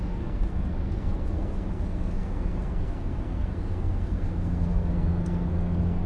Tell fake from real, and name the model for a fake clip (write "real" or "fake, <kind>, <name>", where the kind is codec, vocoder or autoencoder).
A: fake, codec, SNAC